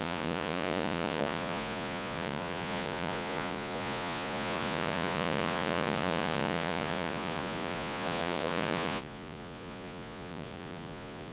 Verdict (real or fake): fake